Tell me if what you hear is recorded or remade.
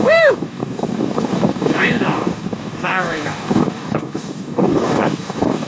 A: remade